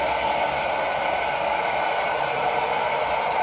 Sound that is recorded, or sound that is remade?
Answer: recorded